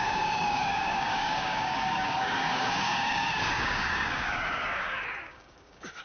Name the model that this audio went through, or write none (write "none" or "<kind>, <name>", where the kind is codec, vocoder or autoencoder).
codec, DAC